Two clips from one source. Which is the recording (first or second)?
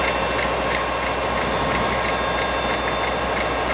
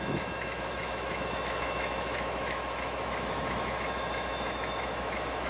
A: first